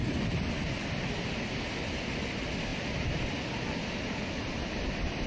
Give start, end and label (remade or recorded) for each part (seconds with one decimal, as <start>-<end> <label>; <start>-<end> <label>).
0.0-5.3 recorded